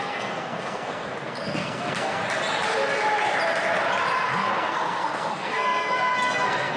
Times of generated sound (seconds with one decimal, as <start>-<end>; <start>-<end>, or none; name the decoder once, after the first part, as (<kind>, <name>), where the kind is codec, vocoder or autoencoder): 0.0-2.2 (codec, SNAC); 4.3-6.8